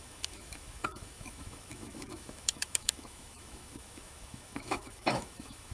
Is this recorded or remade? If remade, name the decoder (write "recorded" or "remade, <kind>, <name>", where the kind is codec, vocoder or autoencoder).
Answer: remade, autoencoder, DAC-VAE